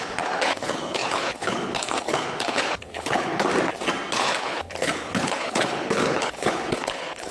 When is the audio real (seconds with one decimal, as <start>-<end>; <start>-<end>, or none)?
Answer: 3.5-4.1